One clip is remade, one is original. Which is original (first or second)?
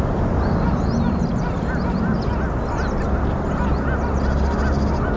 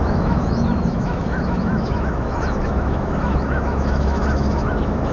first